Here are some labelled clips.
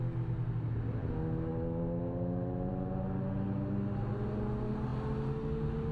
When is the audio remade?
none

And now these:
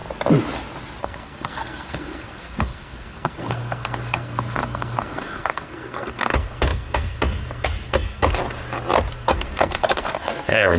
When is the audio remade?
1.0-8.4 (codec, SNAC); 9.1-10.8